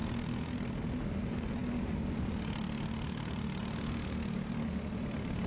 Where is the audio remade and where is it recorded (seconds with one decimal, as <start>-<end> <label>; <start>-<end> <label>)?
0.0-5.5 recorded